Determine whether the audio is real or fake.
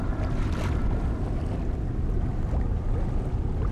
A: real